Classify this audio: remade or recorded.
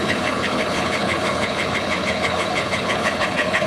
remade